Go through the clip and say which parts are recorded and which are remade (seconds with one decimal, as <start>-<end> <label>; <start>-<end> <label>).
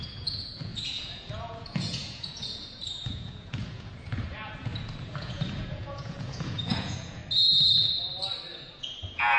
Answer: 0.0-7.2 remade; 7.2-8.5 recorded; 8.5-9.4 remade